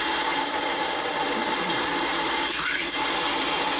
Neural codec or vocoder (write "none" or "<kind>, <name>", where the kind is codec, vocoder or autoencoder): vocoder, BigVGAN v2